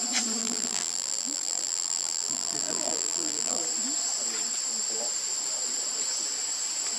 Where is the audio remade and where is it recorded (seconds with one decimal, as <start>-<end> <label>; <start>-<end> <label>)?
0.0-0.4 recorded; 0.4-3.6 remade; 3.6-7.0 recorded